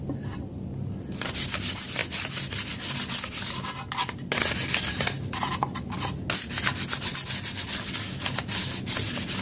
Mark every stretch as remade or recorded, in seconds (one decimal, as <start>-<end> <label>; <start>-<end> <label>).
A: 0.0-9.4 recorded